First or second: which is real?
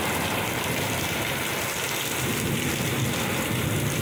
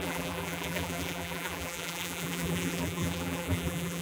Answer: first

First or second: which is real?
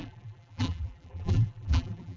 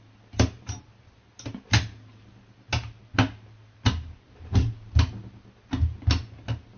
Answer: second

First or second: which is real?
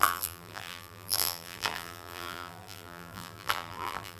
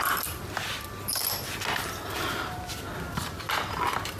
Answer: second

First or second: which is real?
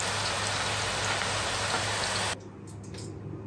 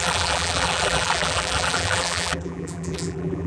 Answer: first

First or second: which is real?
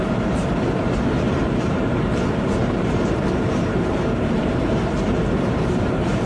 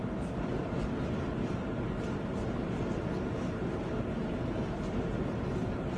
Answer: second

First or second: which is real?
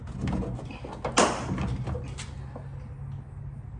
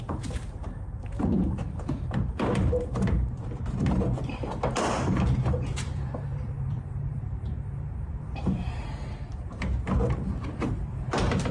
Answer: first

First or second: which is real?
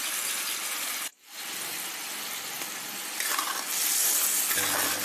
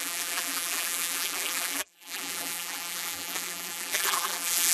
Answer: first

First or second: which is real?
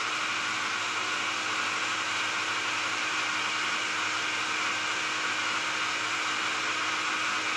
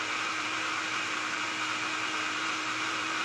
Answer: first